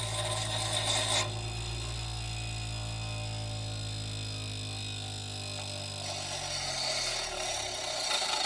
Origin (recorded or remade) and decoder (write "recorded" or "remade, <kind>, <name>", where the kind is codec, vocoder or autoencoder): recorded